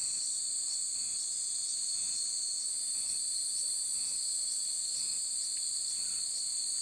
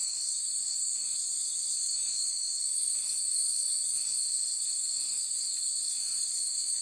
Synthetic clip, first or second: second